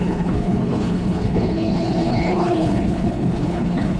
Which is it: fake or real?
fake